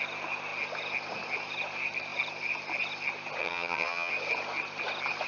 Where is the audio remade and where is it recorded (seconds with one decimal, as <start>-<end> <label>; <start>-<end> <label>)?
0.0-3.4 recorded; 3.4-4.1 remade; 4.1-5.3 recorded